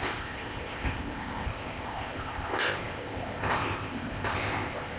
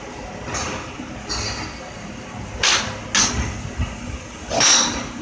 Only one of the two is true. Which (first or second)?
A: second